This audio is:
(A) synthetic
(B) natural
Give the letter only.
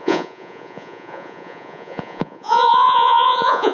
A